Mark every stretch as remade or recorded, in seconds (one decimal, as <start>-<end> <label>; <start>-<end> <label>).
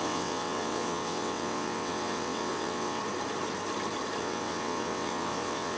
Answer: 0.0-3.0 remade; 3.0-4.2 recorded; 4.2-5.8 remade